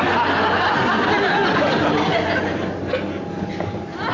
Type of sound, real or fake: real